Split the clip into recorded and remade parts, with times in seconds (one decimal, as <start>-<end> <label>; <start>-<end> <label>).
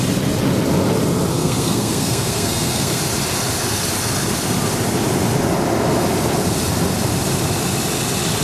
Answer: 0.0-1.3 recorded; 1.3-3.0 remade; 3.0-8.4 recorded